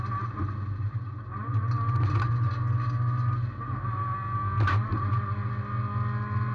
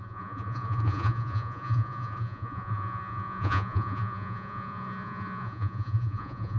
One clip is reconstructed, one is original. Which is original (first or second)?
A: first